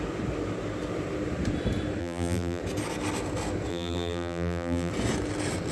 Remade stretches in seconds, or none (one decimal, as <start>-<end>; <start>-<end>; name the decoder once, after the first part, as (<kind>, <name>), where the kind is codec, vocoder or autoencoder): 2.0-2.6 (vocoder, BigVGAN v2); 3.7-4.9